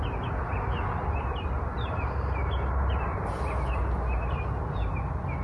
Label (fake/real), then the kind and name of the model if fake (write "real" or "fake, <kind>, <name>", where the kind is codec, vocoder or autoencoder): real